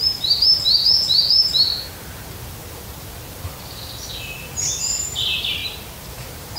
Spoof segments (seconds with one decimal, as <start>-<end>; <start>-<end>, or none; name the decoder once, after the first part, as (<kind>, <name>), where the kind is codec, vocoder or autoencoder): 0.0-1.7 (vocoder, BigVGAN v2); 4.8-5.6; 6.1-6.6